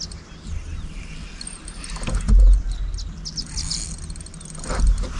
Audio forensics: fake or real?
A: real